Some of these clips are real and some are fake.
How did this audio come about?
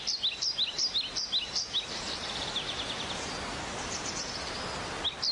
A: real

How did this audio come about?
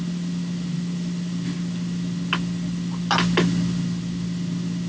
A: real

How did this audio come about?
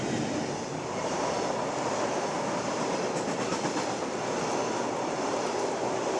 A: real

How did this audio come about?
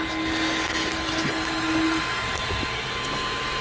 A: real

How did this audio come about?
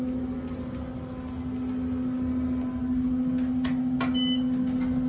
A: real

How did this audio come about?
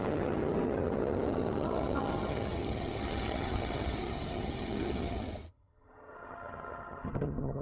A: fake